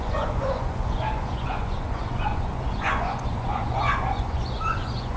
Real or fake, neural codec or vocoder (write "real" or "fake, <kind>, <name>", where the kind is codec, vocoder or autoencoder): fake, vocoder, Vocos